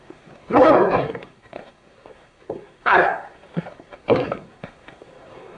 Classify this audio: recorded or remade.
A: remade